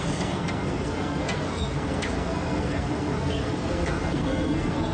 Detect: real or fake fake